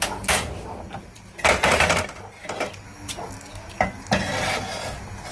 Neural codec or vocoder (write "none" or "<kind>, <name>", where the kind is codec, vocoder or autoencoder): none